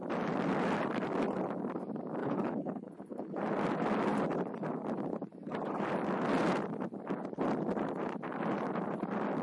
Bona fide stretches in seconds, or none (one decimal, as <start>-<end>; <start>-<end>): 0.0-2.2; 3.4-9.4